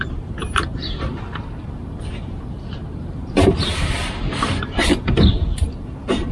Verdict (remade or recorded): remade